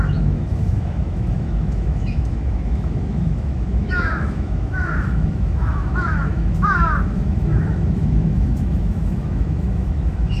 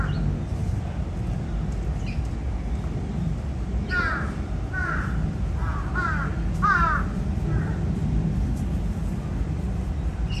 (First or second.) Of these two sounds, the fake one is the first